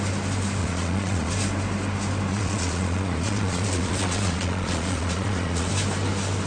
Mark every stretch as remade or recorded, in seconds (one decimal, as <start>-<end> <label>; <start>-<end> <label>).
0.0-0.6 recorded; 0.6-1.3 remade; 1.3-2.3 recorded; 2.3-5.7 remade; 5.7-6.5 recorded